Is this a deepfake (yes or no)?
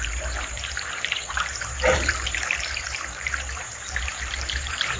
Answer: yes